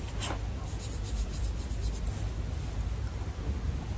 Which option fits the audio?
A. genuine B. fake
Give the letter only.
A